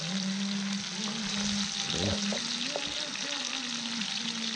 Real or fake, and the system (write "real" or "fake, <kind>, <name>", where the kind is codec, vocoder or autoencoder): real